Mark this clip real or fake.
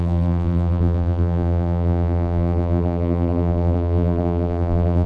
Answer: fake